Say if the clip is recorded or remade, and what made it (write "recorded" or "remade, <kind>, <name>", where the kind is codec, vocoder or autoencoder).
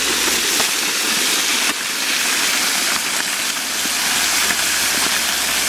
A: recorded